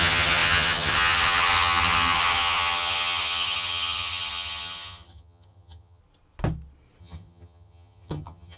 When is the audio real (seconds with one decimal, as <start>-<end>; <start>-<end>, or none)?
6.0-7.0